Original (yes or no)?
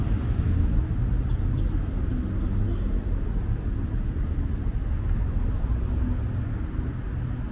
yes